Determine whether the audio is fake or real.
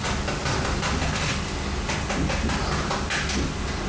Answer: real